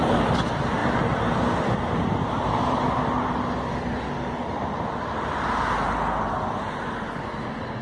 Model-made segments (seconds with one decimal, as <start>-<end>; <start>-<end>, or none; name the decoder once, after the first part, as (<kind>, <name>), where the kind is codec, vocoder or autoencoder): none